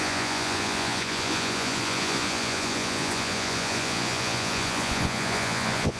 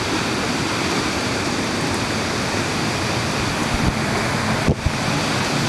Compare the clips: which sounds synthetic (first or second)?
first